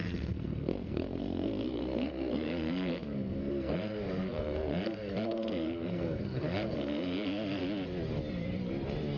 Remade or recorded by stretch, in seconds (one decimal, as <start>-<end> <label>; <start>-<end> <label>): 0.0-7.6 remade; 7.6-9.2 recorded